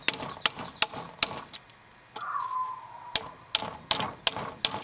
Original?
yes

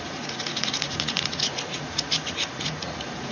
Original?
no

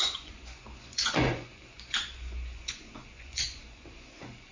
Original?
no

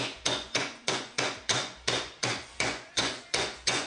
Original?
no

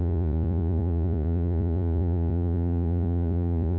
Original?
no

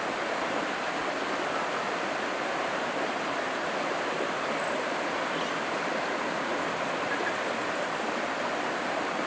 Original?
yes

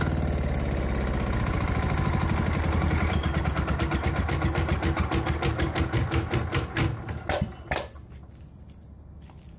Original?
yes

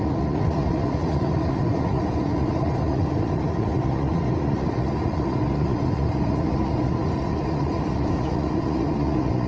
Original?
no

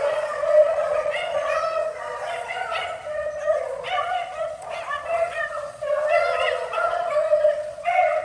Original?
no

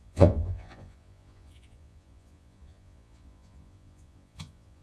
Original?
no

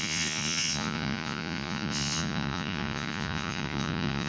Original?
no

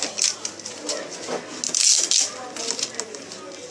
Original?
yes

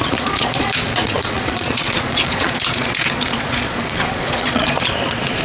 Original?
no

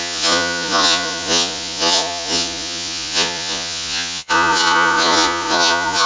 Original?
no